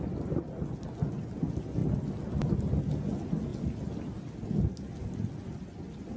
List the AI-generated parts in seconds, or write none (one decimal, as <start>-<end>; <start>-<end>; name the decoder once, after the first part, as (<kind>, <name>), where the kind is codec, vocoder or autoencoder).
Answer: none